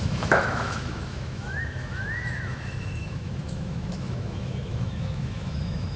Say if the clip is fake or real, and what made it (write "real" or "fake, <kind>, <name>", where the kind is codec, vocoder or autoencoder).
fake, autoencoder, DAC-VAE